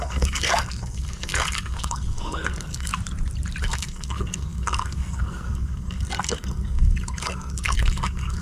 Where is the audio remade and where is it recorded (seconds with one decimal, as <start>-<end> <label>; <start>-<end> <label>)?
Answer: 0.0-2.9 remade; 2.9-3.6 recorded; 3.6-8.4 remade